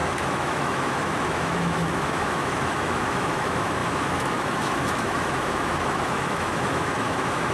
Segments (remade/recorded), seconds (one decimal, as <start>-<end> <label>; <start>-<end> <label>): 0.0-7.5 remade